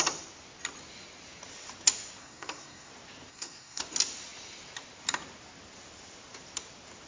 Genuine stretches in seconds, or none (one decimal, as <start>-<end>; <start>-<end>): 0.0-2.2; 2.9-3.3; 3.8-7.1

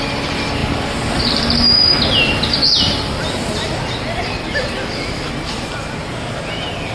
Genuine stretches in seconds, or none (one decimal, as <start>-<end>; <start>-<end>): 0.0-6.9